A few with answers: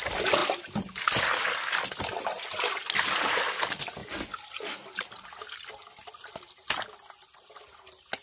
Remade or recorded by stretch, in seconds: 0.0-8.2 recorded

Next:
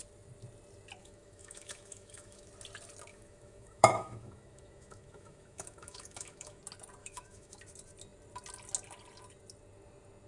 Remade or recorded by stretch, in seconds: 0.0-1.0 recorded; 1.0-2.5 remade; 2.5-3.1 recorded; 3.1-6.6 remade; 6.6-7.0 recorded; 7.0-7.6 remade; 7.6-10.3 recorded

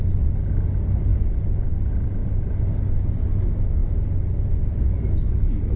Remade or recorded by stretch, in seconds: 0.0-5.8 recorded

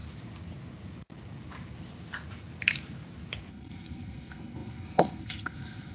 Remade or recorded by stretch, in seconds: 0.0-3.5 recorded; 3.5-5.9 remade

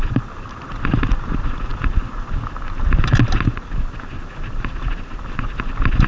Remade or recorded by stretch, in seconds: 0.0-6.1 recorded

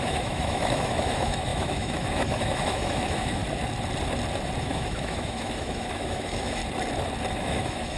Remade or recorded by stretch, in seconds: 0.0-3.4 remade; 3.4-4.6 recorded; 4.6-6.6 remade; 6.6-7.3 recorded; 7.3-8.0 remade